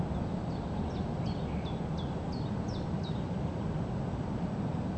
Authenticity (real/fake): real